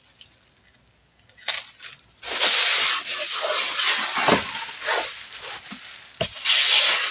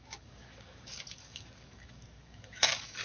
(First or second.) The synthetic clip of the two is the second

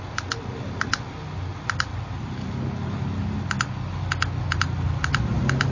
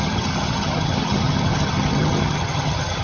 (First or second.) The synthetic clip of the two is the second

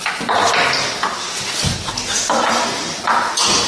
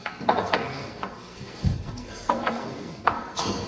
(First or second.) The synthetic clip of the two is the second